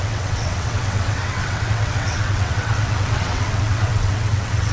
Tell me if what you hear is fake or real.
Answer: fake